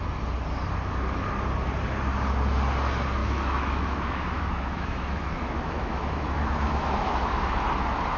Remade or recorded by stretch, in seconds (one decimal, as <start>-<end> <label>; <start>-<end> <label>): 0.0-3.2 recorded; 3.2-7.6 remade; 7.6-8.2 recorded